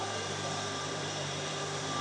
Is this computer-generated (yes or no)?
yes